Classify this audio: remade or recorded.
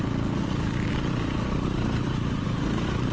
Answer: recorded